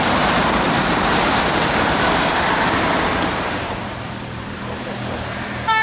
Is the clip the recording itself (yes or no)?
no